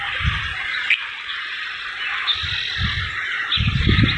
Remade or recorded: recorded